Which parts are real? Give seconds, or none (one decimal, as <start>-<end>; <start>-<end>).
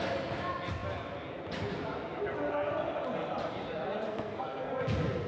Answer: 0.0-4.1; 4.7-5.3